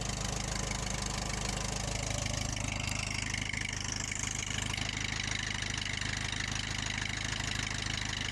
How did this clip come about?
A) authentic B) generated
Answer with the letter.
A